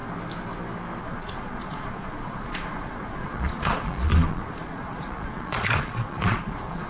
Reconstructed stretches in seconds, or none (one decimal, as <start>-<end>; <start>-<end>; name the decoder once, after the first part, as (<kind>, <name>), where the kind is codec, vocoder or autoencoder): 1.0-6.9 (vocoder, Vocos)